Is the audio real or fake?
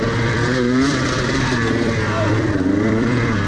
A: fake